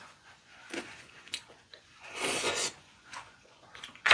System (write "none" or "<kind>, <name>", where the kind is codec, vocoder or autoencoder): vocoder, Vocos